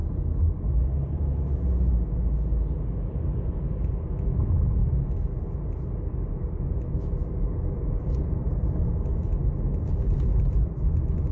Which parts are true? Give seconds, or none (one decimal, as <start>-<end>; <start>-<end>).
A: 0.0-11.3